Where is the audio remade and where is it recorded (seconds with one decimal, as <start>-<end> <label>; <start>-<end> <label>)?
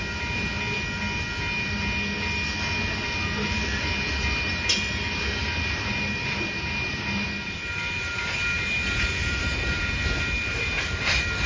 0.0-3.0 recorded; 3.0-3.8 remade; 3.8-5.4 recorded; 5.4-7.7 remade; 7.7-9.2 recorded; 9.2-9.8 remade; 9.8-11.5 recorded